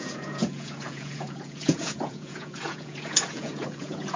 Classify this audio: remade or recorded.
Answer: remade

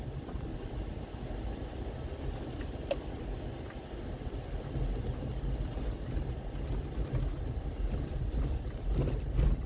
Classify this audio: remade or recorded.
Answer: recorded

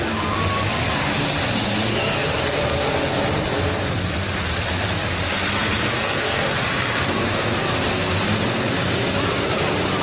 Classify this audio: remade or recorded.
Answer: recorded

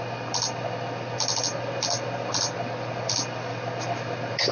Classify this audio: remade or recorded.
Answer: recorded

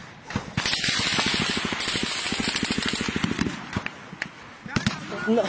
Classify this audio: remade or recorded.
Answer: recorded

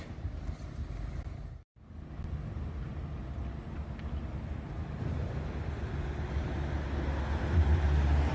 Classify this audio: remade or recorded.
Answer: recorded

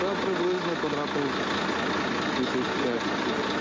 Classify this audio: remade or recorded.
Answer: recorded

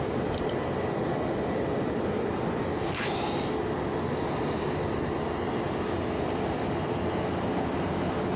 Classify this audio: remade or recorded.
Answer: recorded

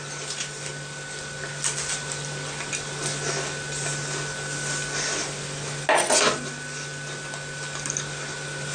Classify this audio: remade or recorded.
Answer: recorded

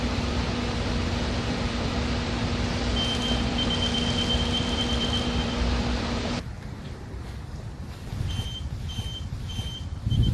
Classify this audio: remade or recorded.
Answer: remade